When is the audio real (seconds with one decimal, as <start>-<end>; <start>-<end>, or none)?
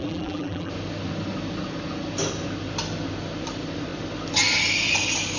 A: 0.7-5.4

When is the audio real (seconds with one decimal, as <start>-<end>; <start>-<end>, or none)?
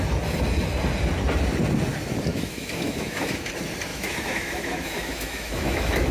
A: 0.0-2.3; 3.5-3.9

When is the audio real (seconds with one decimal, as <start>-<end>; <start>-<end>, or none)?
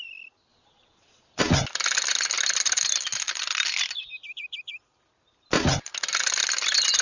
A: 0.0-0.5; 1.4-7.0